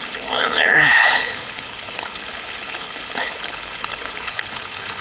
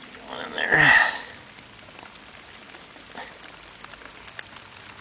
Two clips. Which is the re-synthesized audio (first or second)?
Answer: first